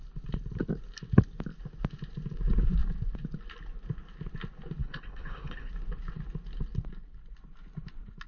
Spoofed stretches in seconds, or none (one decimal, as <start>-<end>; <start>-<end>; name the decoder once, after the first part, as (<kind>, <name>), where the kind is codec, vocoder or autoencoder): 4.8-5.7 (codec, HILCodec)